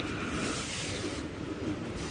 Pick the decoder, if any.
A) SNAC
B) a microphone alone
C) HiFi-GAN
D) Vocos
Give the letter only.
B